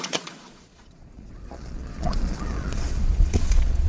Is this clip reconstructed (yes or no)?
yes